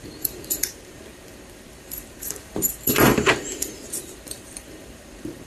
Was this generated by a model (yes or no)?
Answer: yes